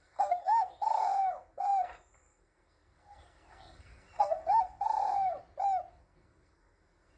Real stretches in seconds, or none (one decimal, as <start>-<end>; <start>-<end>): 5.4-5.9